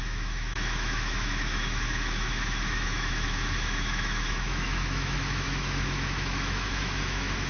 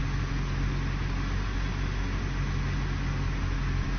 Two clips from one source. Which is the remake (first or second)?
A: first